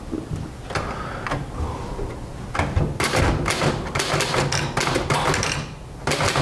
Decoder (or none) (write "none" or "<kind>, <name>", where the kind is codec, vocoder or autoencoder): none